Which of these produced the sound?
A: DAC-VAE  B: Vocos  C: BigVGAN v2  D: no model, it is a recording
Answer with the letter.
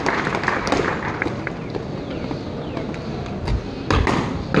D